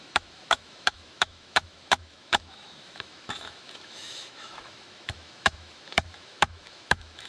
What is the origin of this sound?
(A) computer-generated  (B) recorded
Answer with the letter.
A